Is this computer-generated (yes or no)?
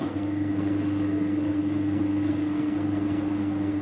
yes